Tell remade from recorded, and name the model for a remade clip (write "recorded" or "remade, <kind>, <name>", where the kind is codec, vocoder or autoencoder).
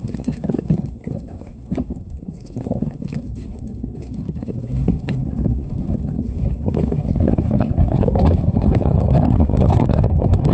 remade, codec, SNAC